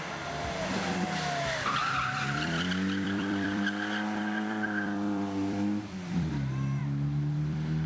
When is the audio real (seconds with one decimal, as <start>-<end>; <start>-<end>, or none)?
0.0-1.8; 6.3-6.8